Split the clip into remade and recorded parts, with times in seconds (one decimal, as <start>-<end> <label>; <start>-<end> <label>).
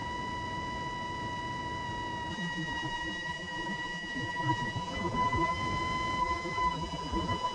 0.0-2.3 recorded; 2.3-5.6 remade; 5.6-6.2 recorded; 6.2-7.5 remade